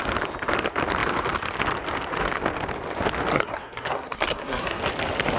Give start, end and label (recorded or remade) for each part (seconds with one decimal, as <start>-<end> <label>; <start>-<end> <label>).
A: 0.0-3.3 recorded; 3.3-4.8 remade; 4.8-5.4 recorded